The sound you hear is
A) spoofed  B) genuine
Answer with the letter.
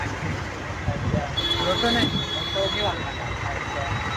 B